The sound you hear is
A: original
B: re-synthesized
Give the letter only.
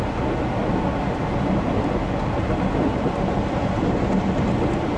A